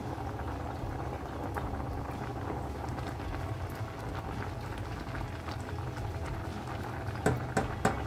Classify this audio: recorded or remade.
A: recorded